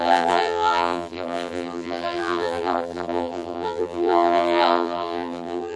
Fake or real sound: fake